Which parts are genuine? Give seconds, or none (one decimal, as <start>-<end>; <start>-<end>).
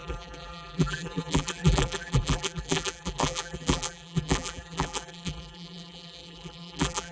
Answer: none